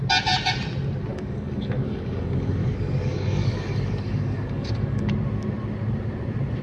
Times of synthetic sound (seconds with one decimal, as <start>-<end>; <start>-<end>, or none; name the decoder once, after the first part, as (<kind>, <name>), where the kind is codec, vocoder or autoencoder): 1.1-5.1 (codec, DAC)